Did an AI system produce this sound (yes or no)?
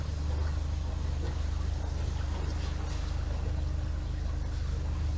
no